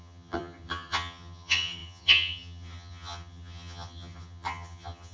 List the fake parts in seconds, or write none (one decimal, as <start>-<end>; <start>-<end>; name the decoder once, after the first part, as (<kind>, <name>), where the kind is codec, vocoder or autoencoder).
0.0-5.1 (vocoder, HiFi-GAN)